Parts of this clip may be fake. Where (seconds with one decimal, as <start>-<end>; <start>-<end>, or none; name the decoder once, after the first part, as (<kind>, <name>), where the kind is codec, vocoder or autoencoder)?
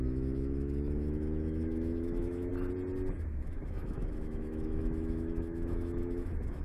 0.0-2.5 (autoencoder, DAC-VAE); 3.2-6.6